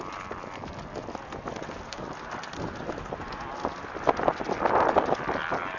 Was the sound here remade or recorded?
recorded